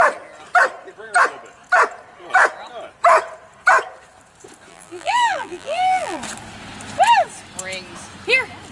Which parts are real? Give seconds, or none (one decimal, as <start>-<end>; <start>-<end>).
0.0-4.7; 6.2-8.7